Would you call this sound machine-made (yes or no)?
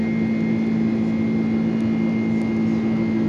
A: no